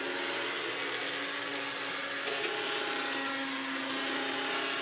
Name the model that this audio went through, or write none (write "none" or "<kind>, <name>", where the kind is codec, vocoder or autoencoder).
none